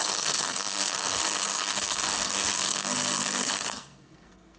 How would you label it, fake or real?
fake